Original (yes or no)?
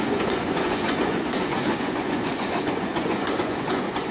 no